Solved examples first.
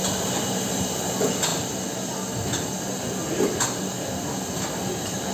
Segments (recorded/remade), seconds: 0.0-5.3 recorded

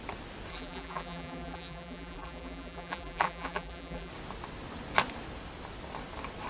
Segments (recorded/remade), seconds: 0.0-0.5 recorded; 0.5-4.1 remade; 4.1-6.5 recorded

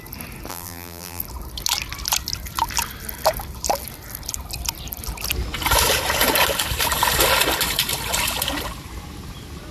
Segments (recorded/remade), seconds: 0.0-0.5 recorded; 0.5-1.2 remade; 1.2-9.7 recorded

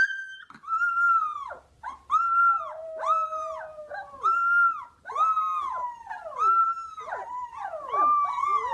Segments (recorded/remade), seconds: 0.0-8.7 recorded

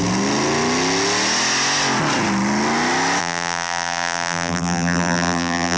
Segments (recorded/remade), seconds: 0.0-3.2 recorded; 3.2-5.8 remade